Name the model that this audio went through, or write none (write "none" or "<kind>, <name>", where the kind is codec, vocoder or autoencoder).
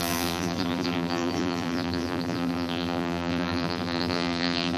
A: vocoder, BigVGAN v2